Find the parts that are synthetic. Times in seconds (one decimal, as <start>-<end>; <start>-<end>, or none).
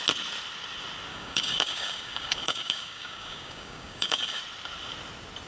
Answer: 1.1-4.4